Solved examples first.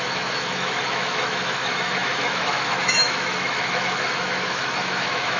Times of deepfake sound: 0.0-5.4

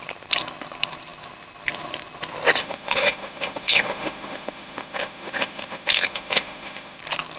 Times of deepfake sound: 2.6-7.0

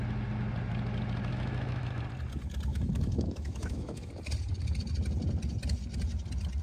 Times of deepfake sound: 1.3-2.0; 2.7-4.1

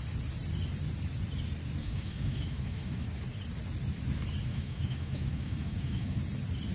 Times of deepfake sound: 1.8-3.1; 4.5-6.2